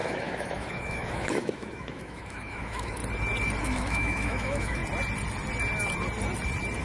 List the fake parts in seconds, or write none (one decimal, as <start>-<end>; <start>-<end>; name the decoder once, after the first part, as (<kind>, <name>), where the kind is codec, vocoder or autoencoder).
0.0-3.0 (autoencoder, DAC-VAE); 3.6-4.8